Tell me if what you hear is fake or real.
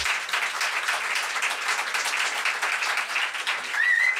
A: real